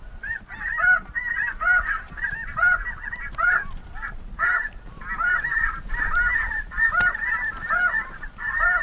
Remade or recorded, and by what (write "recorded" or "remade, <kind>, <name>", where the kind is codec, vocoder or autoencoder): recorded